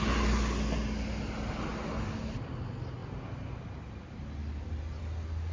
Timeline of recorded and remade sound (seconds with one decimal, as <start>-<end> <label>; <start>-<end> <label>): 0.0-5.5 recorded